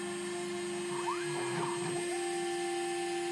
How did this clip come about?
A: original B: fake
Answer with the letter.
A